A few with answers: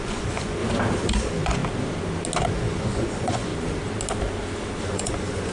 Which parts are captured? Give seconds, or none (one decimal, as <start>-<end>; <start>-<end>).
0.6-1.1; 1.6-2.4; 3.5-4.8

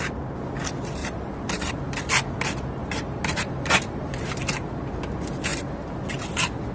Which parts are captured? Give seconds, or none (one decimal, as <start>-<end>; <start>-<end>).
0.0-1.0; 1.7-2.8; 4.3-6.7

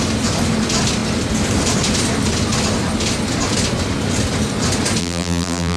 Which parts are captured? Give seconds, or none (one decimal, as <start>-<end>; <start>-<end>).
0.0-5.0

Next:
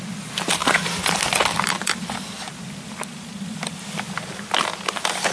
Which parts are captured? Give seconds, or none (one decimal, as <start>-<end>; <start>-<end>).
0.0-5.3

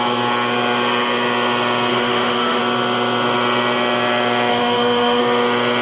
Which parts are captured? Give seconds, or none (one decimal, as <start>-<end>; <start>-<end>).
0.0-1.9; 2.6-4.5; 5.2-5.8

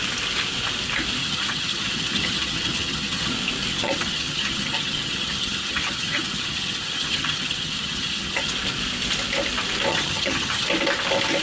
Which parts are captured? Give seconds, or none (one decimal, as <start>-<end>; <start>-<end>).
0.0-1.2; 3.3-3.7; 8.5-9.9; 10.7-11.4

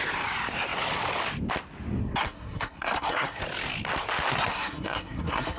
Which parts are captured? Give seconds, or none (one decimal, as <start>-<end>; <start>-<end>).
0.0-2.0; 3.4-4.3